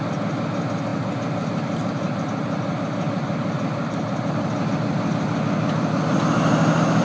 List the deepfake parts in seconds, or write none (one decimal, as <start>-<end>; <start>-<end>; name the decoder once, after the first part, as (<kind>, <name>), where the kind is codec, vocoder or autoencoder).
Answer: none